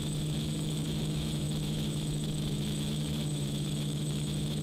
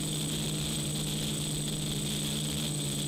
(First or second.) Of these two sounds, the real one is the second